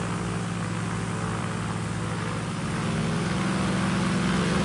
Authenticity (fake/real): real